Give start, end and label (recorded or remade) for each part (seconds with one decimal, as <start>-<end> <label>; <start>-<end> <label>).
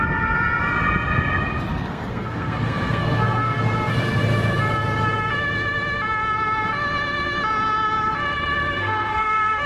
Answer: 0.0-1.7 recorded; 1.7-3.6 remade; 3.6-8.8 recorded; 8.8-9.7 remade